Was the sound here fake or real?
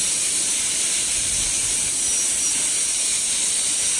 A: real